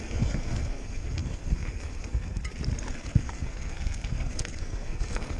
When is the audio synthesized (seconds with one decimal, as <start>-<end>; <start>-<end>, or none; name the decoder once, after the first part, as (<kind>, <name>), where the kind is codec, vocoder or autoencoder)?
0.0-2.4 (codec, SNAC); 2.9-5.4